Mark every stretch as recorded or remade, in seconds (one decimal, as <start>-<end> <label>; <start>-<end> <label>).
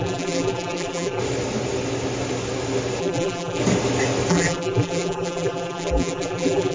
0.0-1.2 remade; 1.2-3.0 recorded; 3.0-3.6 remade; 3.6-4.3 recorded; 4.3-6.7 remade